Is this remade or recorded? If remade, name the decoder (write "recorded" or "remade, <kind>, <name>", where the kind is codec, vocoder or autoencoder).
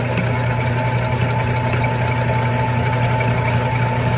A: recorded